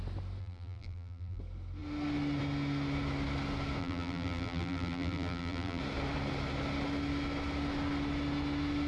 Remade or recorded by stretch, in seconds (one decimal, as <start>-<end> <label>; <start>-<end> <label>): 0.0-0.4 recorded; 0.4-1.4 remade; 1.4-3.8 recorded; 3.8-5.8 remade; 5.8-8.9 recorded